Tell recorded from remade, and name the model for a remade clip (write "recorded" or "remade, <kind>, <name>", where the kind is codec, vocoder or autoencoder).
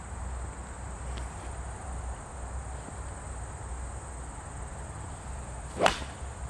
recorded